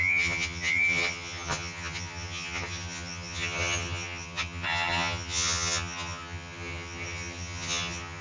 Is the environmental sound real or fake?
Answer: fake